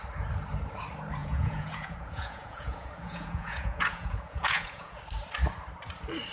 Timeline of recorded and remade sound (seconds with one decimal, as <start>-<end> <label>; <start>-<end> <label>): 0.0-1.2 recorded; 1.2-5.0 remade; 5.0-6.3 recorded